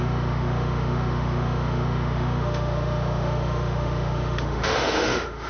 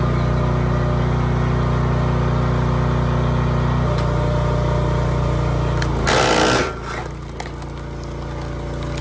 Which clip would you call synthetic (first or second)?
first